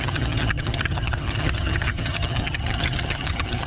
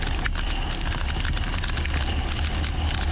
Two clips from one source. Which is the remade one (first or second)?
first